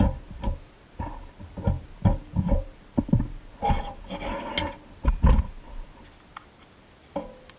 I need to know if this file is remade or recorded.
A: recorded